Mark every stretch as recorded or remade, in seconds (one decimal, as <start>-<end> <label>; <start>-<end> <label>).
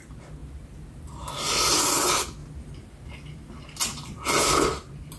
0.0-5.2 recorded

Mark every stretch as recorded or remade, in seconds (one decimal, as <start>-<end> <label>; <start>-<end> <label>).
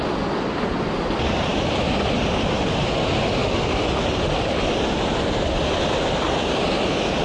0.0-7.2 recorded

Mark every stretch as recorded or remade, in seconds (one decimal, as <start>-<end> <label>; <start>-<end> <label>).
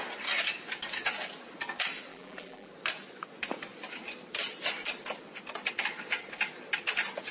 0.0-2.1 recorded; 2.1-2.7 remade; 2.7-7.3 recorded